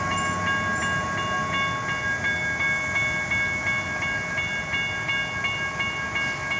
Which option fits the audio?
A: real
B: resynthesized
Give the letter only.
A